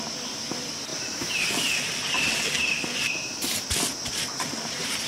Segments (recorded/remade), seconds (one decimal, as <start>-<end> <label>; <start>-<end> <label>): 0.0-5.1 recorded